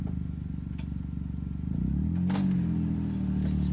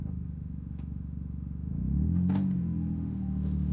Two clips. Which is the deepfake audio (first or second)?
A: second